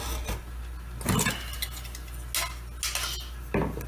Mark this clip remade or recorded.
recorded